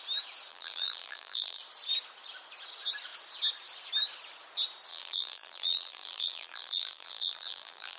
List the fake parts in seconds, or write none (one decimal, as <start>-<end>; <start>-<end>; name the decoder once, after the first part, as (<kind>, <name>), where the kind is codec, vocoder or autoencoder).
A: 0.5-1.6 (vocoder, BigVGAN v2); 4.9-8.0